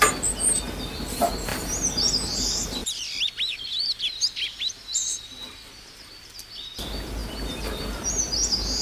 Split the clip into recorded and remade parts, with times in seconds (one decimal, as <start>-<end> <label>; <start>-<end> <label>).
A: 0.0-1.5 recorded; 1.5-2.1 remade; 2.1-2.8 recorded; 2.8-6.3 remade; 6.3-7.2 recorded; 7.2-8.1 remade; 8.1-8.8 recorded